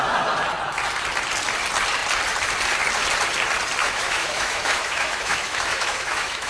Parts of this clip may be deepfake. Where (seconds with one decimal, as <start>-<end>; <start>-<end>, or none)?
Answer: 3.8-6.5